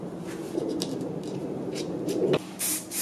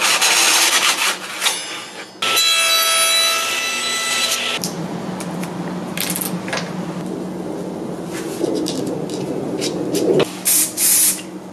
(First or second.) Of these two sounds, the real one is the second